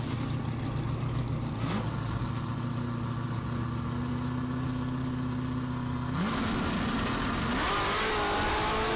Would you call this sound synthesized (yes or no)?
no